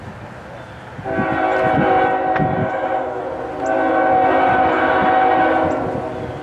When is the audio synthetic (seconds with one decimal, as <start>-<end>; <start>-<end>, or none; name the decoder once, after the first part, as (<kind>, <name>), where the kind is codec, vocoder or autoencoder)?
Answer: 2.6-3.2 (autoencoder, DAC-VAE)